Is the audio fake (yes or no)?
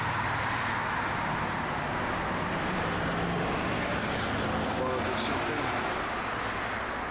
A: no